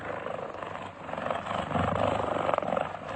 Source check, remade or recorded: recorded